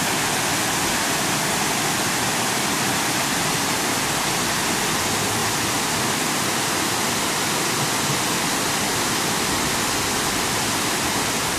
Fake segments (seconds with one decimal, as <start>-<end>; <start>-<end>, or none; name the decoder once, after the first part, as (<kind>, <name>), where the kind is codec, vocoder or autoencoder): none